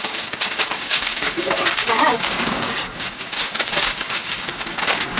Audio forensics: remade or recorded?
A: remade